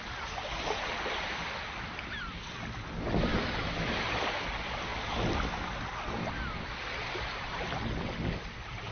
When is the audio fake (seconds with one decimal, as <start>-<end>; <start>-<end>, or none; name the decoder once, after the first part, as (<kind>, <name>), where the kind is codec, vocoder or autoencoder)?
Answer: none